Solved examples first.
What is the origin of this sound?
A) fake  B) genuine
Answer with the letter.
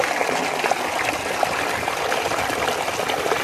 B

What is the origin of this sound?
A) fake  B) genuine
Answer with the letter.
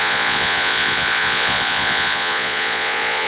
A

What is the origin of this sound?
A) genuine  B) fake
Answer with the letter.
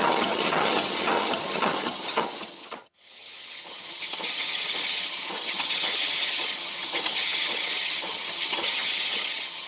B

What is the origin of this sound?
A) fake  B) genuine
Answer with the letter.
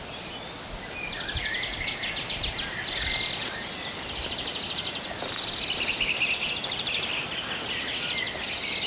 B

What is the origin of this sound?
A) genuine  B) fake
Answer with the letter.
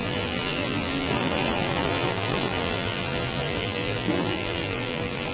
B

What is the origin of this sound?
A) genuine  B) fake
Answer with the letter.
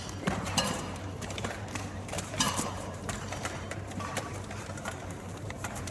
B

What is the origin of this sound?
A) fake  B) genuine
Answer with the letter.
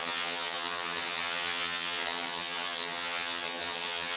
A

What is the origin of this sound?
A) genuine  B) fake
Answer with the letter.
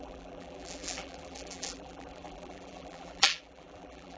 B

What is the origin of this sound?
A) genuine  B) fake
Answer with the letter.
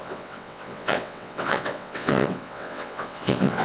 B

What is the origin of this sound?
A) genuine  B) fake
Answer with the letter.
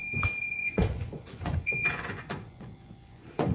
B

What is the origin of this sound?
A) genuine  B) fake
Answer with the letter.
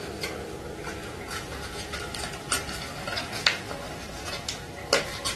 A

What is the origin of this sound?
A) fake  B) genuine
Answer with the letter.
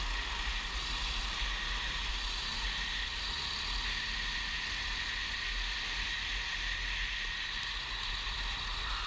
B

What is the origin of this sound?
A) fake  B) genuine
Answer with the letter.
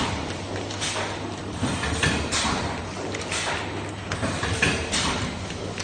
B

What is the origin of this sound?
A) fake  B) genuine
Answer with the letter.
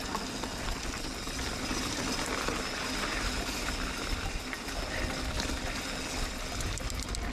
B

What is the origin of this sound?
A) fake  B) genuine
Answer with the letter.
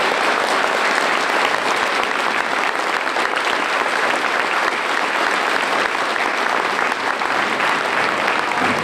B